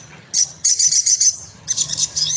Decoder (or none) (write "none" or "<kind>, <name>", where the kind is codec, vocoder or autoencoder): vocoder, HiFi-GAN